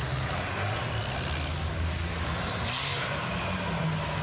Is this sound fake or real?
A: real